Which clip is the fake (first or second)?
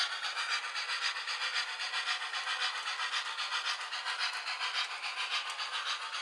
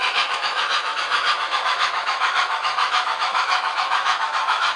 second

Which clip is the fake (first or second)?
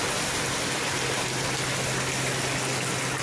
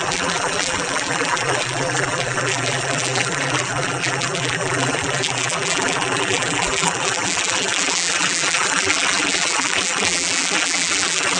second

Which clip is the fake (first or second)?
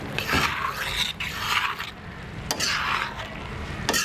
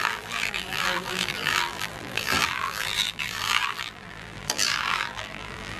second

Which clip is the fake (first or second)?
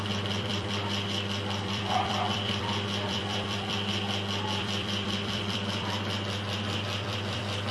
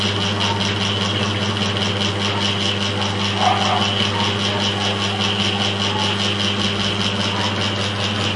first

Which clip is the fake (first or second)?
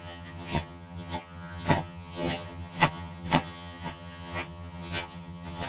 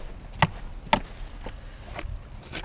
first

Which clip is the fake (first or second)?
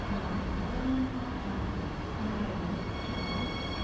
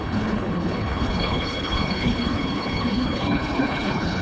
second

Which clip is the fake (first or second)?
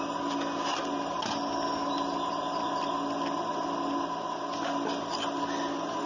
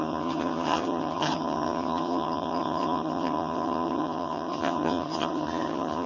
second